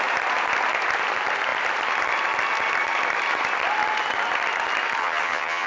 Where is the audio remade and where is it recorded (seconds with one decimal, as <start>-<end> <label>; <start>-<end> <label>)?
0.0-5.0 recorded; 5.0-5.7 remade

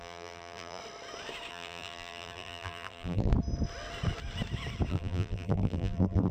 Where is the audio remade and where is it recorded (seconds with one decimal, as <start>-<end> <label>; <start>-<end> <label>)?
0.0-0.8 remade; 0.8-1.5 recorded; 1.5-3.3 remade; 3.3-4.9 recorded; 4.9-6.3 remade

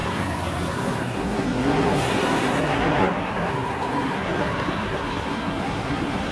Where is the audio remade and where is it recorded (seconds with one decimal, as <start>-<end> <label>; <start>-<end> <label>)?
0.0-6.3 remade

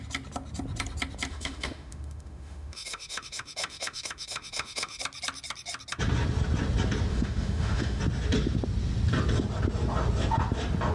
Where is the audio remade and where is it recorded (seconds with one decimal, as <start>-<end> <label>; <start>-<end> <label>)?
0.0-1.3 recorded; 1.3-5.0 remade; 5.0-7.1 recorded; 7.1-8.0 remade; 8.0-10.9 recorded

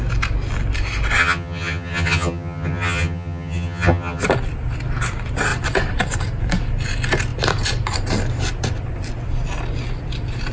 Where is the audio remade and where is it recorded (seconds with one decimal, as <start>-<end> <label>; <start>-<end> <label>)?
0.0-1.2 recorded; 1.2-4.2 remade; 4.2-10.5 recorded